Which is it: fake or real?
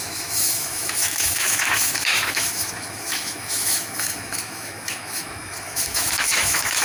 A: fake